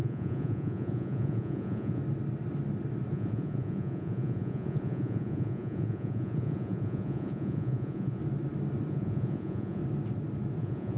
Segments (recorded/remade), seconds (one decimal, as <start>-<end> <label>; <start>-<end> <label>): 0.0-2.0 remade; 2.0-3.1 recorded; 3.1-8.2 remade; 8.2-8.9 recorded; 8.9-9.8 remade; 9.8-10.6 recorded; 10.6-11.0 remade